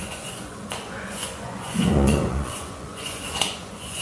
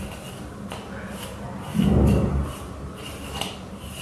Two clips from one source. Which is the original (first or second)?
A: second